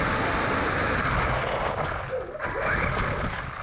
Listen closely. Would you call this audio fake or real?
real